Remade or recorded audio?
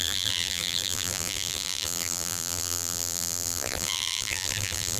remade